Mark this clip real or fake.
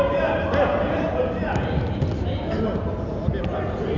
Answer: real